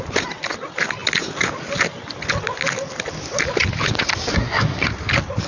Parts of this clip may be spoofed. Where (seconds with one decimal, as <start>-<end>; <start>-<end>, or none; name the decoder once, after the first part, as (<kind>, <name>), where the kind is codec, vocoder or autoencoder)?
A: 4.3-4.9 (codec, SNAC)